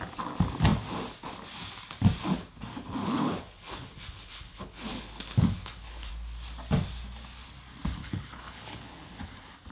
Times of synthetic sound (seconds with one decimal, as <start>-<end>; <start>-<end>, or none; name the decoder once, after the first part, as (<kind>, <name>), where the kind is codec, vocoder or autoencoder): 3.0-6.1 (codec, HILCodec); 8.0-9.1